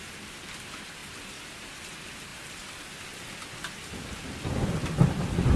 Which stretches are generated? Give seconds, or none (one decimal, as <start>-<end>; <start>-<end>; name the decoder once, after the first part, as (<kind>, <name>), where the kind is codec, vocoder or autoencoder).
none